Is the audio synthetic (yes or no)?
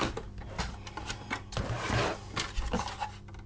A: no